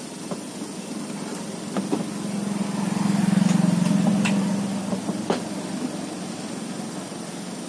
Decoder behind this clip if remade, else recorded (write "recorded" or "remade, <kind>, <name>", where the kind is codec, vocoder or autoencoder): recorded